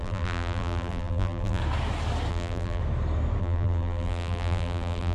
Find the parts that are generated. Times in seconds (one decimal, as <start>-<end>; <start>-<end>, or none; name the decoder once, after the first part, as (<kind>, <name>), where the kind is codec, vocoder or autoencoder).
0.0-1.6 (vocoder, BigVGAN v2); 2.3-2.8; 3.4-5.1